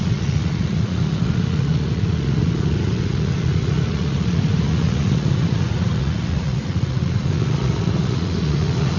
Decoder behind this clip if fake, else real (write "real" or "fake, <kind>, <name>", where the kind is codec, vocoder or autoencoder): fake, vocoder, Vocos